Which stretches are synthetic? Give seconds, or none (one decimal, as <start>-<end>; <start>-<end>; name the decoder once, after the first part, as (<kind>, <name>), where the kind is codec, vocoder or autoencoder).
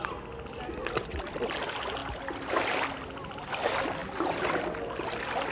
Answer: none